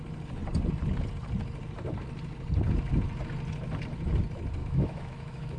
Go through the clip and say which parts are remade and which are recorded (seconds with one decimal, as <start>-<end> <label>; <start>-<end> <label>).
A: 0.0-4.6 recorded; 4.6-5.6 remade